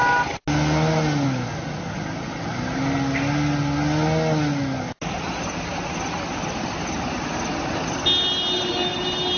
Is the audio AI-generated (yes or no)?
no